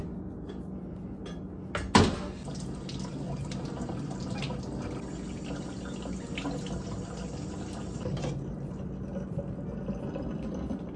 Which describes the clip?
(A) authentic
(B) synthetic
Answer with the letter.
A